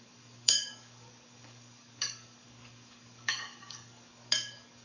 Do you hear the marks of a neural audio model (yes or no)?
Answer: yes